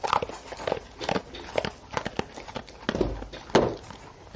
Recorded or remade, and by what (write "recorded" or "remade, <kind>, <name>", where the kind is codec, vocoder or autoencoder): recorded